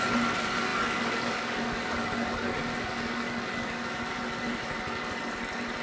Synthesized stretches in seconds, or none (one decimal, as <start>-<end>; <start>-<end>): 0.0-5.8